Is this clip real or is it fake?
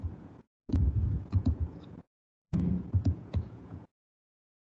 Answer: fake